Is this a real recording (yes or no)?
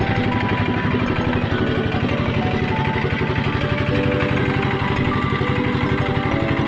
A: yes